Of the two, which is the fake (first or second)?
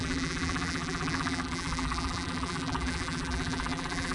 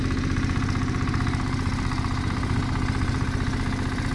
first